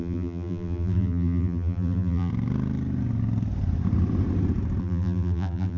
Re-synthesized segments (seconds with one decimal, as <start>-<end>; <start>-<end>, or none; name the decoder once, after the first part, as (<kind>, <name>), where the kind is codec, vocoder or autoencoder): 0.0-2.3 (vocoder, BigVGAN v2); 4.8-5.8